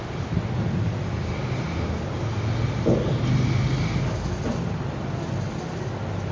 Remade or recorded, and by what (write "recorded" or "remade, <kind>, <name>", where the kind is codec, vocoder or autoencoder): recorded